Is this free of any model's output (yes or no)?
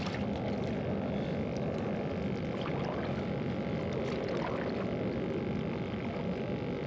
yes